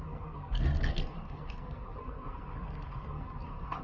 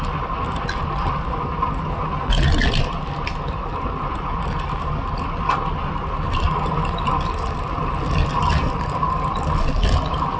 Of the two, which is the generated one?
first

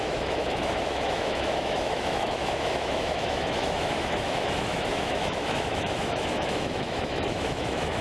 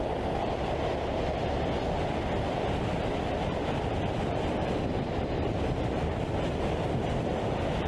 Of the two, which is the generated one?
first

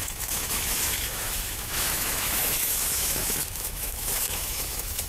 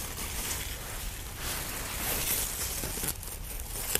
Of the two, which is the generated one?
first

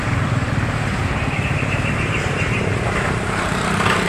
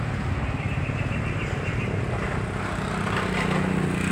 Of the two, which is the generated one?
first